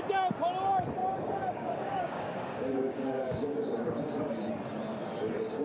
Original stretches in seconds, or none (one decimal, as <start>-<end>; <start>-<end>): 0.0-1.0; 4.4-4.9